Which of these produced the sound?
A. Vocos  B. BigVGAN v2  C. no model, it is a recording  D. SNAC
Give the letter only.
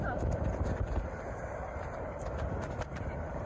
C